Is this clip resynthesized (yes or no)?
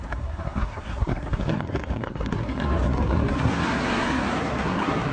yes